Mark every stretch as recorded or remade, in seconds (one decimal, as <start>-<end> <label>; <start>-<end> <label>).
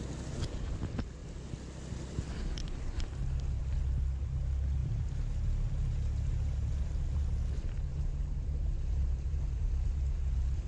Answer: 0.0-4.8 recorded; 4.8-5.5 remade; 5.5-7.9 recorded; 7.9-10.7 remade